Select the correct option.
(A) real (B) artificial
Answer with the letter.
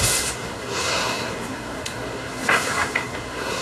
B